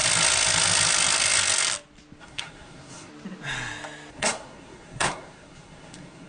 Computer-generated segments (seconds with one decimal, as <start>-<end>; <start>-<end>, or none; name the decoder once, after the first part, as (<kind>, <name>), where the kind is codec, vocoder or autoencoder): 2.2-3.1 (codec, SNAC); 4.1-6.3